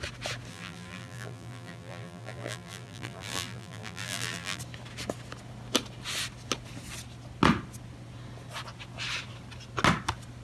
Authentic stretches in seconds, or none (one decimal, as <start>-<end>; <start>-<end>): 0.0-0.5; 4.6-10.4